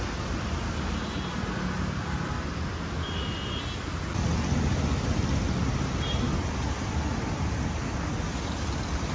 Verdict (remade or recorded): recorded